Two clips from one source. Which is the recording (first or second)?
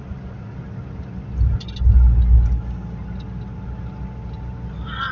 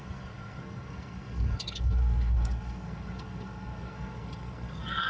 first